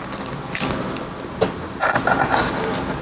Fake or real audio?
real